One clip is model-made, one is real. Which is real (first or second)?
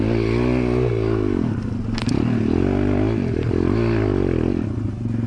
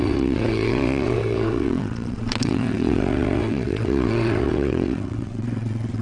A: first